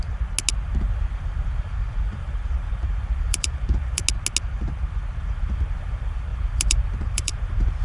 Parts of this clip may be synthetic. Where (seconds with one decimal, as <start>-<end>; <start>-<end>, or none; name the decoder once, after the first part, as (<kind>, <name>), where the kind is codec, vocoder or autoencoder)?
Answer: 0.7-4.0 (vocoder, BigVGAN v2); 5.2-7.8